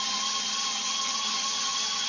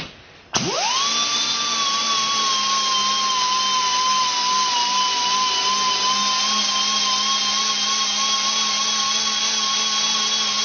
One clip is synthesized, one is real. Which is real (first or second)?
second